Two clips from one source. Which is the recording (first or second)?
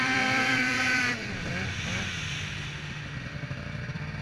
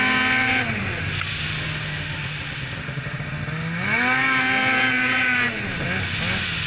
second